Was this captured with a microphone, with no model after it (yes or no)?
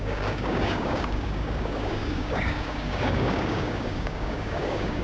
no